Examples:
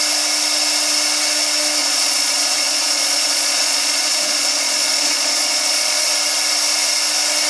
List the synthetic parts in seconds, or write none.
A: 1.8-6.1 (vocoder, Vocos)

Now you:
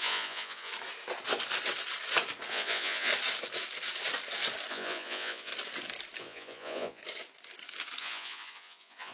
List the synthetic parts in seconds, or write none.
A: 0.0-0.7 (vocoder, Vocos); 2.5-3.1; 4.7-5.5; 6.2-7.0; 8.0-9.1

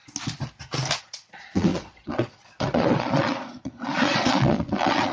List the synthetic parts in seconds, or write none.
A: 1.0-5.1 (vocoder, Vocos)

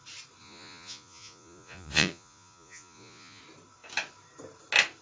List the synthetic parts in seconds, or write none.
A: 0.4-3.4 (vocoder, Vocos)

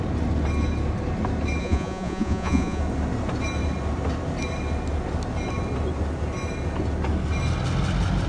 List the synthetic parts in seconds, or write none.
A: 1.6-2.8 (vocoder, Vocos)

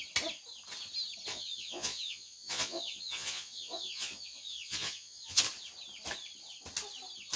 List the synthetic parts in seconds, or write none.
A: 1.3-5.4 (vocoder, Vocos)

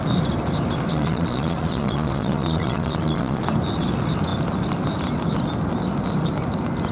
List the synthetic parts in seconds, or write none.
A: 0.9-3.4 (vocoder, Vocos)

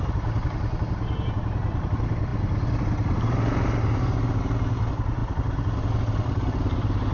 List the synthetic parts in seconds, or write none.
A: none